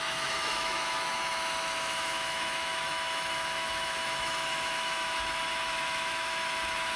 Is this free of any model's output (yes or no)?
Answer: no